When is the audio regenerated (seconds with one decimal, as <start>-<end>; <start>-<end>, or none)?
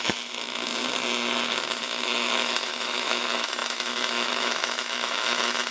0.0-0.7; 1.8-5.7